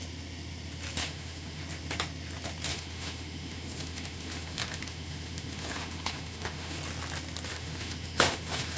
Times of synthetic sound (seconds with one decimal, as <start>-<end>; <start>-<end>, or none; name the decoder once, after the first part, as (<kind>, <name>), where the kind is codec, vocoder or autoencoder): 1.0-1.6 (autoencoder, DAC-VAE); 2.7-6.8; 7.5-8.8